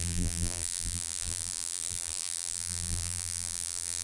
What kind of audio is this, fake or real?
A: fake